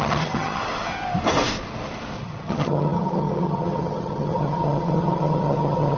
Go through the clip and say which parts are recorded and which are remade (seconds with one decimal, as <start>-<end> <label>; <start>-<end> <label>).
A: 0.0-0.6 remade; 0.6-2.2 recorded; 2.2-6.0 remade